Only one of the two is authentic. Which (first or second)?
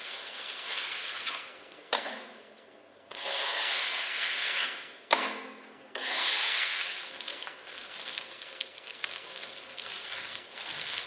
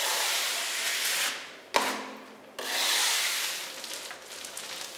second